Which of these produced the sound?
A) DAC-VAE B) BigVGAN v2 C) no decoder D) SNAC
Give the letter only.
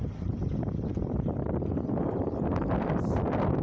C